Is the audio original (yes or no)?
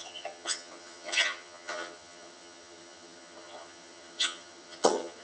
no